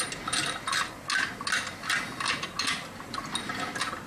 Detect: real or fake real